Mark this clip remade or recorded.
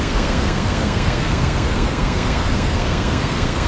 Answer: remade